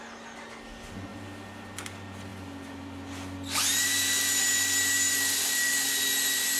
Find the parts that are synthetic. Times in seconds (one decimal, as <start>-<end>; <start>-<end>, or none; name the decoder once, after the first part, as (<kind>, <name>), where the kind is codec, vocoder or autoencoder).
2.3-6.6 (vocoder, BigVGAN v2)